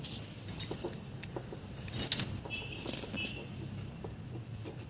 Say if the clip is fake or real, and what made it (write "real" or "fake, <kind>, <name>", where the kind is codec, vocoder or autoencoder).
real